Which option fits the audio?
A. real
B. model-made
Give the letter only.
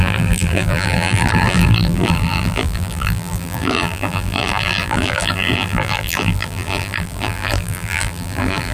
B